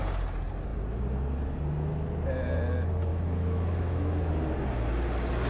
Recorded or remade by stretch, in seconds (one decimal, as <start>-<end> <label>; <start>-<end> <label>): 0.0-3.1 recorded; 3.1-4.3 remade; 4.3-5.5 recorded